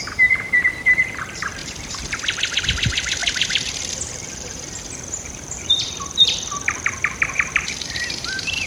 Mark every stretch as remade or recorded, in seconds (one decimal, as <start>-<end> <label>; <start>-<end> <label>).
0.0-8.7 remade

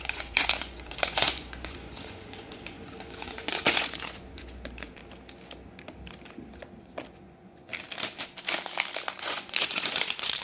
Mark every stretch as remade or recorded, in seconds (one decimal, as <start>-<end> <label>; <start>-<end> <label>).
0.0-5.0 remade; 5.0-6.8 recorded; 6.8-7.7 remade; 7.7-9.2 recorded; 9.2-10.4 remade